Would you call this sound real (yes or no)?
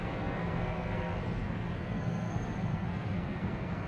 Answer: no